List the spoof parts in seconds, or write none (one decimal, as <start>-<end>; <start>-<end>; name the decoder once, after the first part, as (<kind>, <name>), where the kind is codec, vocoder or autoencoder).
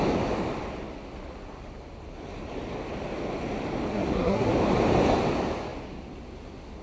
3.9-4.5 (codec, SNAC)